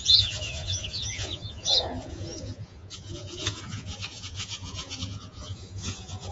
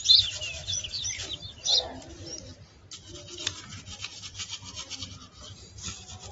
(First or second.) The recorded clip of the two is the second